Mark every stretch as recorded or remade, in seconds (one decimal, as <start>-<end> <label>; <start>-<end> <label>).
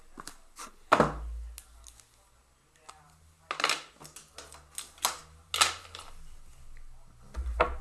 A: 0.0-7.8 recorded